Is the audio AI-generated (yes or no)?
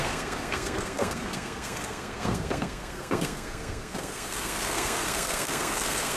yes